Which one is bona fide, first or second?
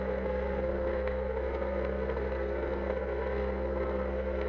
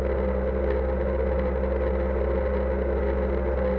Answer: second